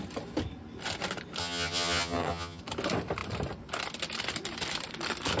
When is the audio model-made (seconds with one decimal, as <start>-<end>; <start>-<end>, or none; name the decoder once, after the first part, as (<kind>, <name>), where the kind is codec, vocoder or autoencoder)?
1.4-2.6 (vocoder, HiFi-GAN)